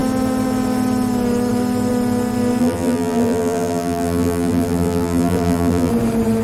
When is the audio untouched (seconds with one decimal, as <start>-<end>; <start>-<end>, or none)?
0.0-2.6; 5.9-6.4